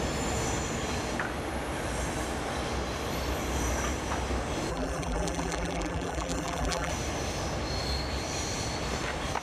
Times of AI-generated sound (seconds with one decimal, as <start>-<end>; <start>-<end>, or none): 4.7-6.9